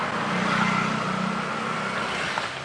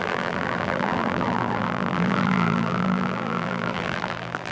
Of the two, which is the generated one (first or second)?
second